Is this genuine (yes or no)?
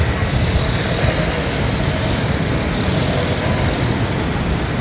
yes